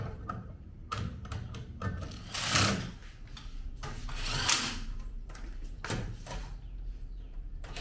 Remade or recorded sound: recorded